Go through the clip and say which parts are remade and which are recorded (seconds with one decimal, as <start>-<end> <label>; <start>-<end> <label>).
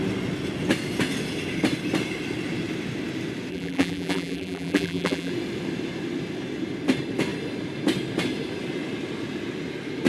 0.0-3.5 recorded; 3.5-5.3 remade; 5.3-10.1 recorded